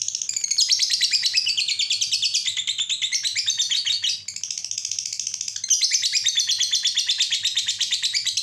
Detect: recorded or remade recorded